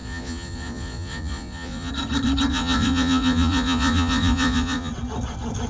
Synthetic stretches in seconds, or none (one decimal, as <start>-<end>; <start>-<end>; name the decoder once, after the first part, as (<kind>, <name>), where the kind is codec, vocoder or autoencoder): 0.0-1.9 (vocoder, Vocos); 2.5-4.9